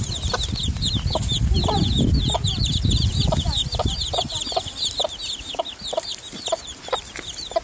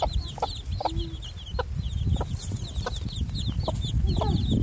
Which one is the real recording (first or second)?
second